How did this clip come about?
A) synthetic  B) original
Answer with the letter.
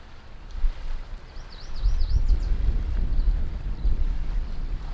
B